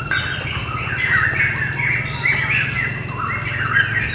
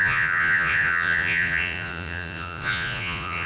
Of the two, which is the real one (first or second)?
first